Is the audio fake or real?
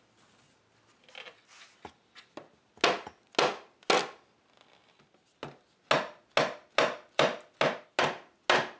real